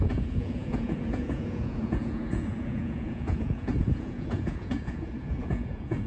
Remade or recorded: remade